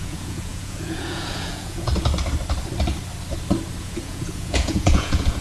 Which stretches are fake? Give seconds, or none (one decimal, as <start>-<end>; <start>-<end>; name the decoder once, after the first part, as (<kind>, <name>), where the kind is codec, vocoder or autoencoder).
0.0-1.9 (vocoder, Vocos); 3.8-5.4